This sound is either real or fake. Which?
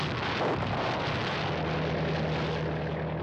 real